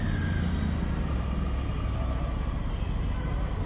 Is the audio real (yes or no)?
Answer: yes